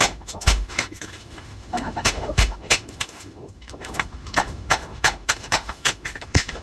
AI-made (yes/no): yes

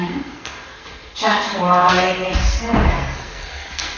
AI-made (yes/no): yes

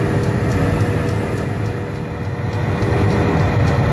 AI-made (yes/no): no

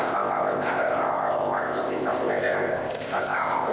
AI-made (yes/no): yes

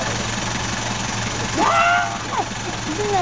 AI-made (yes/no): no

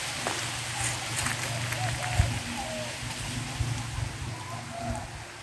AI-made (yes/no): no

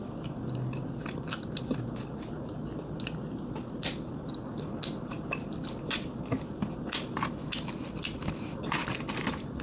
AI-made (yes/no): no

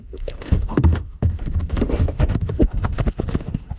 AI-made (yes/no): yes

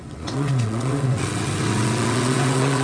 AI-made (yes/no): yes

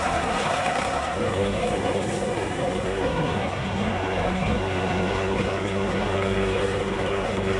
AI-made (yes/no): yes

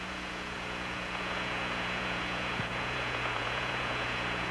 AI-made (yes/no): yes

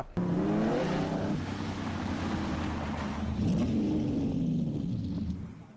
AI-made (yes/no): no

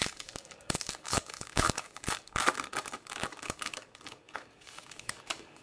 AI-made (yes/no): yes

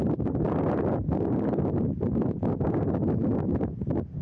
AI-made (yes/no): no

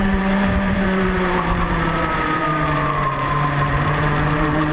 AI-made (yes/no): yes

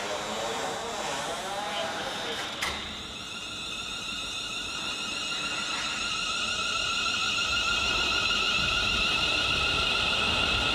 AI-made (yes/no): yes